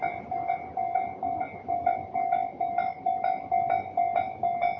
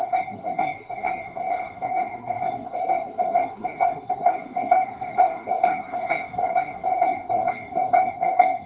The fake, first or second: second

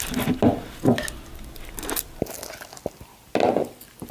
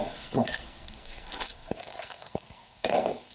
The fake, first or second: second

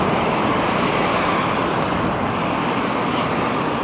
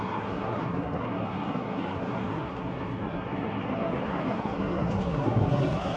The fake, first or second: second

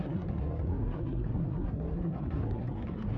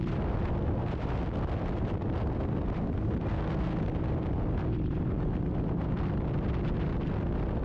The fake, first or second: first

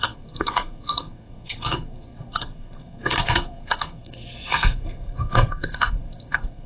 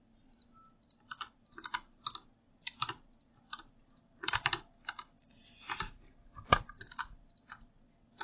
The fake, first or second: first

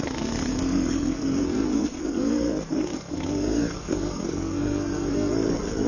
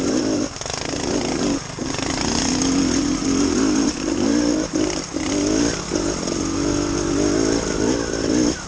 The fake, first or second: first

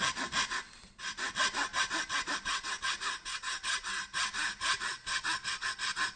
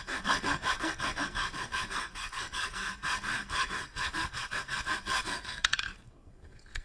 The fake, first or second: second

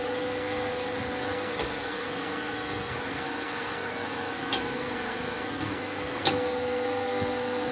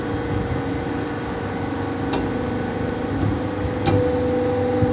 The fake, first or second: first